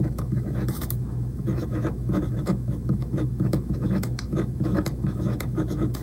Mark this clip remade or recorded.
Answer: remade